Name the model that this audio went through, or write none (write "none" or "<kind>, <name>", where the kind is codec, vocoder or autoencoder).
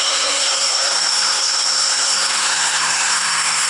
codec, SNAC